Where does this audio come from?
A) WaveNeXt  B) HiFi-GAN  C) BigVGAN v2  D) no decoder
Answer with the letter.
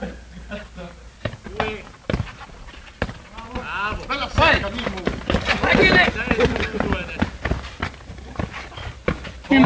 D